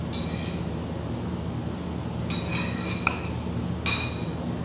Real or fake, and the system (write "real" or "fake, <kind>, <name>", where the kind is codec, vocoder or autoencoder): real